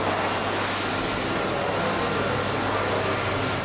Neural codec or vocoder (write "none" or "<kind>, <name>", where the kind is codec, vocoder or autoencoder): none